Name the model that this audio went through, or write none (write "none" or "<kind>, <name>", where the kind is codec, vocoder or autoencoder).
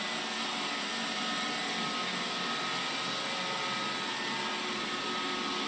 none